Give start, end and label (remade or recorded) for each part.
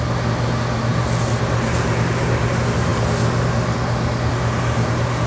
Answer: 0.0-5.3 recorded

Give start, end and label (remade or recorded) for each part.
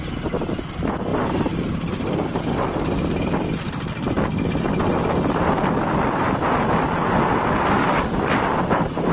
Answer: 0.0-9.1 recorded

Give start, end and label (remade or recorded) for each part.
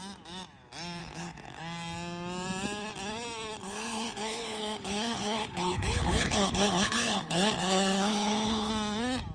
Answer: 0.0-1.0 recorded; 1.0-1.6 remade; 1.6-3.6 recorded; 3.6-8.7 remade; 8.7-9.3 recorded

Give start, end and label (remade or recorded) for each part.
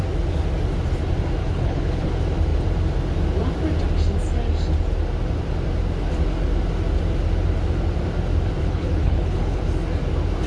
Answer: 0.0-1.4 recorded; 1.4-2.1 remade; 2.1-8.6 recorded; 8.6-9.6 remade; 9.6-10.5 recorded